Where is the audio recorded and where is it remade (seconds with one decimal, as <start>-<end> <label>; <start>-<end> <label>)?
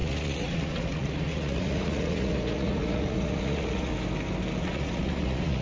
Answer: 0.0-3.9 remade; 3.9-4.6 recorded; 4.6-5.6 remade